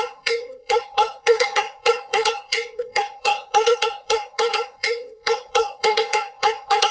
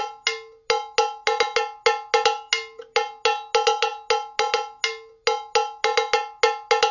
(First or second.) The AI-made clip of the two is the first